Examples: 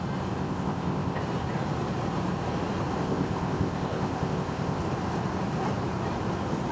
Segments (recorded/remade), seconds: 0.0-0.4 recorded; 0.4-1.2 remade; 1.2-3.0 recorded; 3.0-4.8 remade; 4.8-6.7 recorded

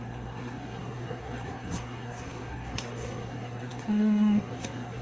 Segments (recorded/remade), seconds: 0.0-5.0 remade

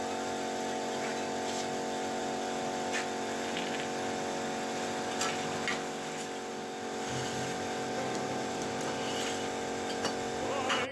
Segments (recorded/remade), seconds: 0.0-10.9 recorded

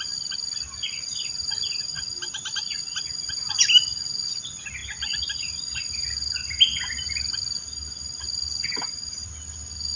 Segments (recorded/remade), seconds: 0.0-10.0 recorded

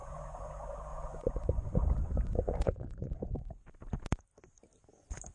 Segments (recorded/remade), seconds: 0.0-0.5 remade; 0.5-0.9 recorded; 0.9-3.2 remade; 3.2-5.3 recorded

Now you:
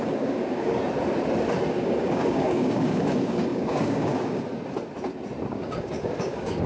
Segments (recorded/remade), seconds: 0.0-0.8 remade; 0.8-1.7 recorded; 1.7-4.5 remade; 4.5-5.5 recorded; 5.5-6.7 remade